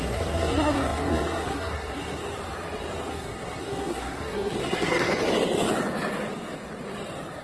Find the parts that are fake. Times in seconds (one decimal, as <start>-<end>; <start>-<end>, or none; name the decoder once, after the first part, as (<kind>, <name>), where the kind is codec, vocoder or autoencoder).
0.0-2.2 (codec, SNAC); 3.1-5.1